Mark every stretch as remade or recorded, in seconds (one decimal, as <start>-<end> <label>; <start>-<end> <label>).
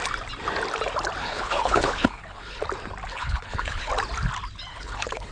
0.0-1.2 recorded; 1.2-2.6 remade; 2.6-3.1 recorded; 3.1-3.9 remade; 3.9-4.7 recorded; 4.7-5.3 remade